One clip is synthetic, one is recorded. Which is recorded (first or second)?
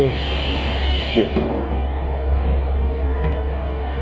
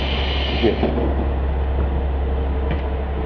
second